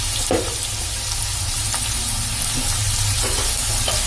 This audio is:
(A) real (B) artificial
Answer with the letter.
A